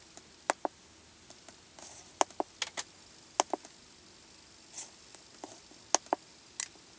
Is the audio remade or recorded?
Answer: recorded